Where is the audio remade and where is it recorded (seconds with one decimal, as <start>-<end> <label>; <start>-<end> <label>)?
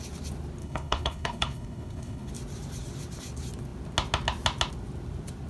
0.0-0.6 recorded; 0.6-2.3 remade; 2.3-5.5 recorded